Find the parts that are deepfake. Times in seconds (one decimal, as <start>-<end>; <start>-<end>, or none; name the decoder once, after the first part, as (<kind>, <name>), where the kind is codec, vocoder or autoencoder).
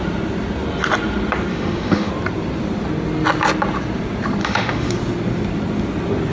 1.5-2.1 (autoencoder, DAC-VAE); 4.4-4.9